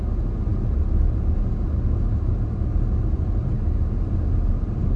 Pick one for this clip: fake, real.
real